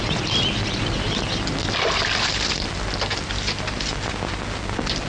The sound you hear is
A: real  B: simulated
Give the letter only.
A